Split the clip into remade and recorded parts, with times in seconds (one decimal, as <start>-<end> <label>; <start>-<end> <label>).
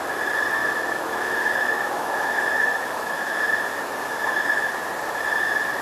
0.0-0.6 recorded; 0.6-3.4 remade; 3.4-4.2 recorded; 4.2-4.7 remade; 4.7-5.8 recorded